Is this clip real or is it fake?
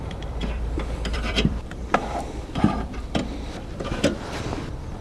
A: fake